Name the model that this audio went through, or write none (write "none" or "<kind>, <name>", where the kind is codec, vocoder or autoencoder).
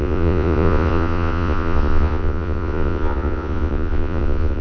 vocoder, Vocos